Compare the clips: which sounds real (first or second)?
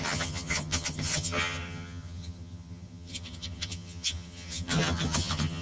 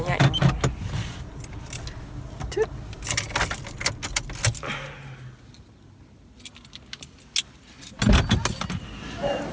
second